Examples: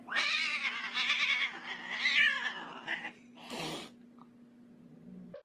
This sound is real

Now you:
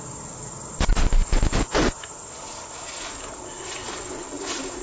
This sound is real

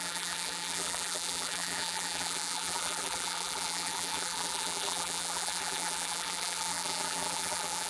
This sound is fake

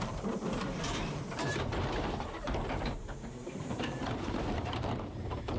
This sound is fake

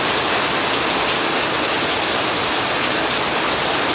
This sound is real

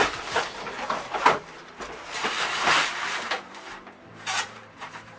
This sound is fake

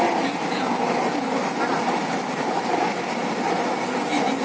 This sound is real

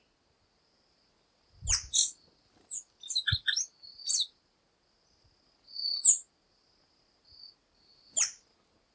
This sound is real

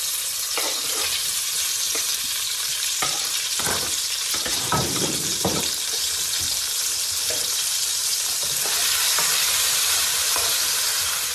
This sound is fake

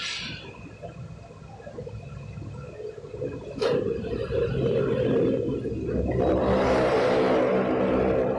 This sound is real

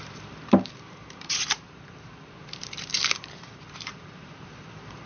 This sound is fake